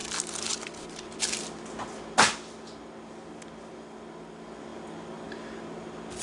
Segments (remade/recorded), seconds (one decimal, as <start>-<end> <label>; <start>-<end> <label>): 0.0-6.2 recorded